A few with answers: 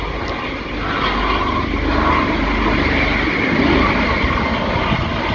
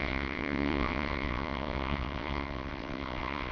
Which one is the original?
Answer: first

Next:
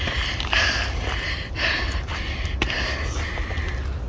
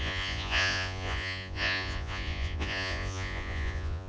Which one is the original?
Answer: first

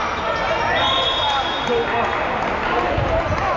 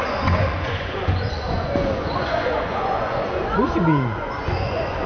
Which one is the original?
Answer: first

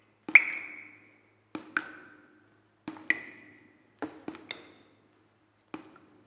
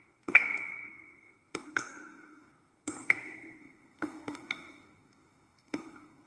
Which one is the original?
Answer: first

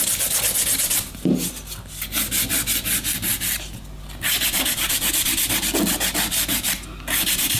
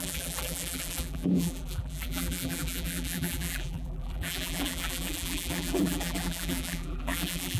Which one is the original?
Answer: first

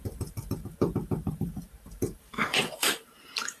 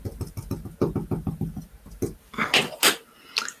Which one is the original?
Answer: second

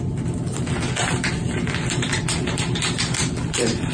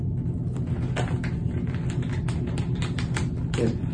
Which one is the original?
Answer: second